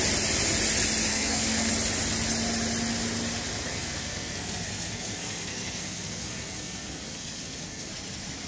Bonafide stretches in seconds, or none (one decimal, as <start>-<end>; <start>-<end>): 0.0-1.1; 1.7-3.7; 7.9-8.5